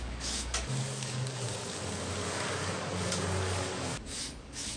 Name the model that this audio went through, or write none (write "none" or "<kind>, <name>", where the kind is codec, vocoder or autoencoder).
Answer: codec, DAC